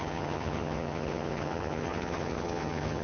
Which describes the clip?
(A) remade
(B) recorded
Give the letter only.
A